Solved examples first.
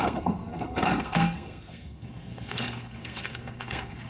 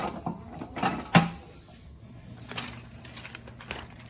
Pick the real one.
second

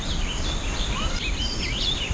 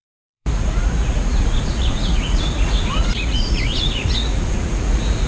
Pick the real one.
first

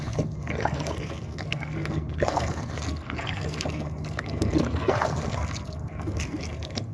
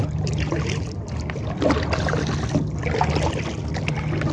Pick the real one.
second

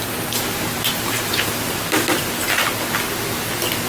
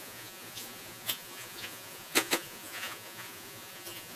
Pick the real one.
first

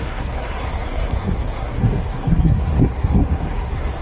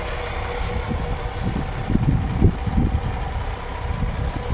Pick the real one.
second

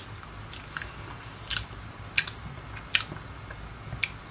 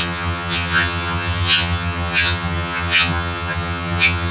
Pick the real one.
first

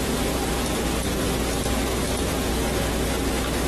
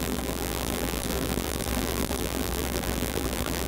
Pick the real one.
first